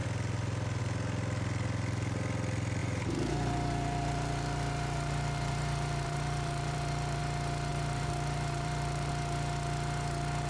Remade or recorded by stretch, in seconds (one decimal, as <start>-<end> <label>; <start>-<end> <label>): 0.0-2.8 recorded; 2.8-7.2 remade; 7.2-7.7 recorded; 7.7-9.1 remade; 9.1-10.5 recorded